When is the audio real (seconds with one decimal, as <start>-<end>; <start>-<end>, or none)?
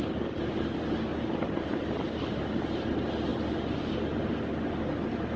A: 0.0-5.4